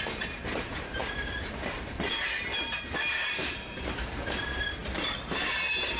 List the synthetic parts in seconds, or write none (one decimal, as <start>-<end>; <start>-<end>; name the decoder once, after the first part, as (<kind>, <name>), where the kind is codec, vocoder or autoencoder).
0.0-1.0 (vocoder, BigVGAN v2); 1.5-4.8; 5.3-6.0